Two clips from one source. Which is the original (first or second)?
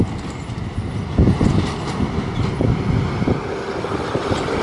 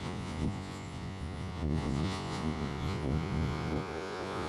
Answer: first